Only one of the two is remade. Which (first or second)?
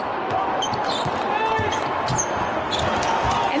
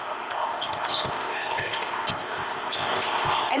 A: second